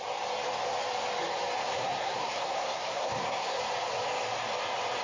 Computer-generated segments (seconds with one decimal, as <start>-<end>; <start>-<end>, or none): 1.6-3.6